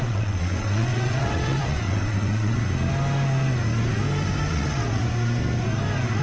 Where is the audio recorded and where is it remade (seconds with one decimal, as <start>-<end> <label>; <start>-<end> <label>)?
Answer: 0.0-2.6 remade; 2.6-4.5 recorded; 4.5-5.0 remade; 5.0-6.2 recorded